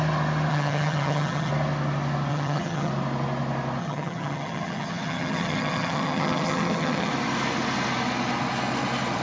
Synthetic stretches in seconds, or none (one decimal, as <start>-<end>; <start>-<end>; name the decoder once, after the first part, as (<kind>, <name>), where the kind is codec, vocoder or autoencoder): 0.5-1.5 (vocoder, HiFi-GAN); 2.3-2.9; 3.8-7.1